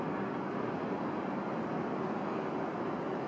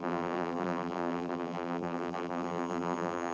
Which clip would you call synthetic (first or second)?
second